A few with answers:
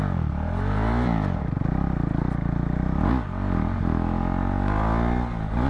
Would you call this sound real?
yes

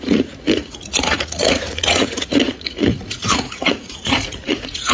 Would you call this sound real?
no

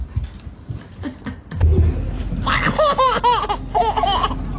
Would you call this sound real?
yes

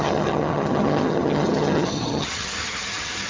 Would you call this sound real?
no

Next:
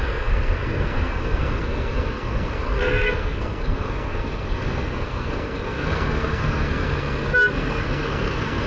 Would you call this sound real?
no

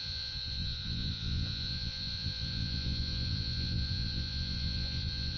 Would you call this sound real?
no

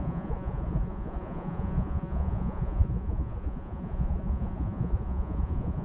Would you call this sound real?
no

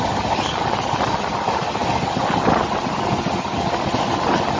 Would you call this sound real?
yes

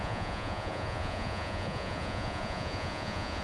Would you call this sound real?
no